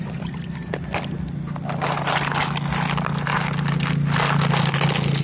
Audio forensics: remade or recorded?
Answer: recorded